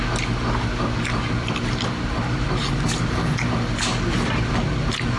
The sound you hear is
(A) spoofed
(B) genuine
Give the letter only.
B